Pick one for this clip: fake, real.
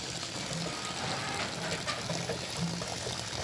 real